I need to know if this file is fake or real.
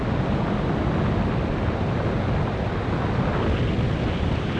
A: real